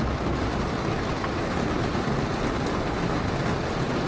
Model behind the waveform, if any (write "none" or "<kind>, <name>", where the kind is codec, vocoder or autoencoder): none